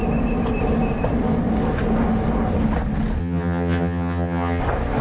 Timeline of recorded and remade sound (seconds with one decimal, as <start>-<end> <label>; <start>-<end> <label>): 0.0-3.2 recorded; 3.2-4.6 remade; 4.6-5.0 recorded